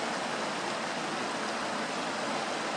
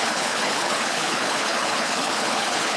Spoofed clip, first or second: second